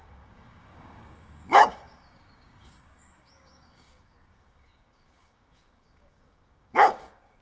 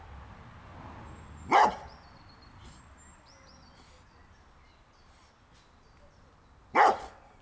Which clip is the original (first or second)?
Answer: second